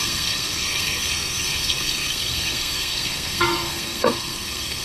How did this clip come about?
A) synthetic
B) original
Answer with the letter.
A